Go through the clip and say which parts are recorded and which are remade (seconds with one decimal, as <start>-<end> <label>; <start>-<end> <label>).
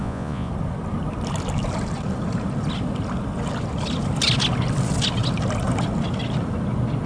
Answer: 0.0-0.5 remade; 0.5-7.1 recorded